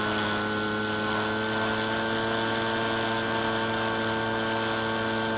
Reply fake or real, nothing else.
real